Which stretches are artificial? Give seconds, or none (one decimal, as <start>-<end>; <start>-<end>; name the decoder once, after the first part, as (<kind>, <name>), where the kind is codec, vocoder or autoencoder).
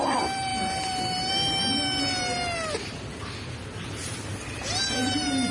0.0-0.5 (vocoder, BigVGAN v2); 3.8-4.3; 4.9-5.5